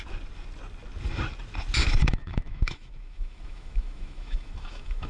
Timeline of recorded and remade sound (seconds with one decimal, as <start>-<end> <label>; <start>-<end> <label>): 0.0-2.0 recorded; 2.0-5.1 remade